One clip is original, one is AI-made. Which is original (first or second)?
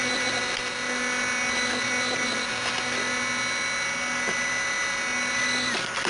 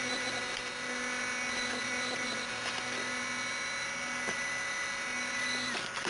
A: first